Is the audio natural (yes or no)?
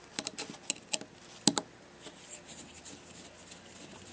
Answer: yes